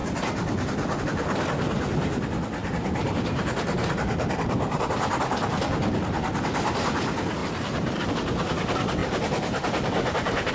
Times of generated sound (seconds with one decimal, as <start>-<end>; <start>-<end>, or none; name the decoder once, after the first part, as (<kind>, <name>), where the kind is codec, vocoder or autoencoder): 2.6-4.9 (vocoder, BigVGAN v2); 7.4-8.1; 9.0-10.5